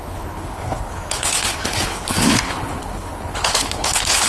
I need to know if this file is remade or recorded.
remade